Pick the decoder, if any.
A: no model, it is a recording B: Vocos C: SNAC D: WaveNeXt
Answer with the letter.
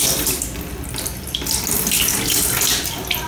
A